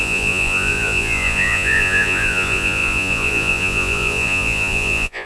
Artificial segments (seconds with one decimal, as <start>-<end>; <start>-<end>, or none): 0.0-5.3